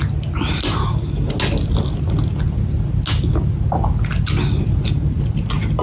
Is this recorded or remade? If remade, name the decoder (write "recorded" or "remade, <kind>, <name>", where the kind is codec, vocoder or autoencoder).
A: recorded